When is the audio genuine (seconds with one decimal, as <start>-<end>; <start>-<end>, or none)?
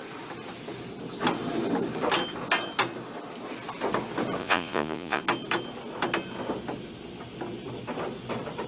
0.0-4.4; 5.2-8.7